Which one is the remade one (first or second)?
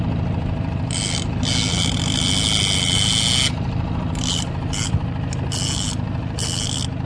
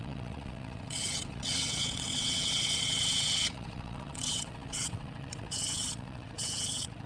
second